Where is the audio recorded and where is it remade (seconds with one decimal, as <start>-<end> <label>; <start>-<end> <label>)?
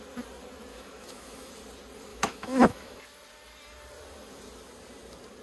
0.0-0.7 recorded; 0.7-1.5 remade; 1.5-2.1 recorded; 2.1-3.0 remade; 3.0-5.4 recorded